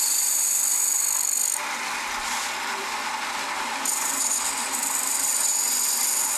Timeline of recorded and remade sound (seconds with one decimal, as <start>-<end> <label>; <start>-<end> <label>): 0.0-6.4 recorded